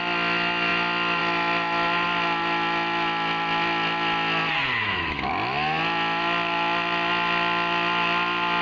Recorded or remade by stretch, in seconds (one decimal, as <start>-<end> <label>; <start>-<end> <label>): 0.0-4.8 recorded; 4.8-5.3 remade; 5.3-8.6 recorded